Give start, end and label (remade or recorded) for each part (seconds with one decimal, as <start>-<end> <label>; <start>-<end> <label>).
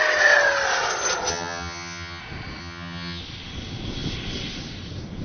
0.0-1.3 recorded; 1.3-2.2 remade; 2.2-2.6 recorded; 2.6-3.2 remade; 3.2-5.2 recorded